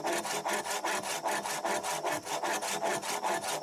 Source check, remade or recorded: recorded